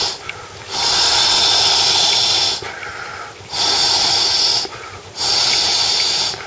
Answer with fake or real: real